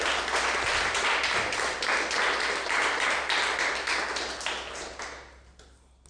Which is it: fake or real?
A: real